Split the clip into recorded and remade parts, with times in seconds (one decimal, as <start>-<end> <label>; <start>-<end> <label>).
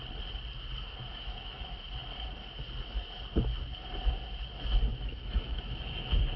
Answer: 0.0-1.0 recorded; 1.0-1.6 remade; 1.6-4.9 recorded; 4.9-6.4 remade